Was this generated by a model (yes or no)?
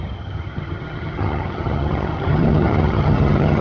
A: yes